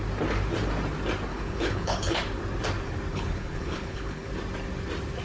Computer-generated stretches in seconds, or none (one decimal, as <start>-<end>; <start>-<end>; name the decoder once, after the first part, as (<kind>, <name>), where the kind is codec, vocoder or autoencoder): 1.3-2.2 (codec, HILCodec); 3.1-4.3